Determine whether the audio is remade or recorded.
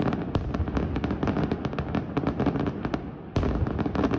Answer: recorded